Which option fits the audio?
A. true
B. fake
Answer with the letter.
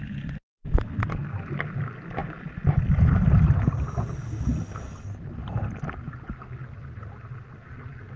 A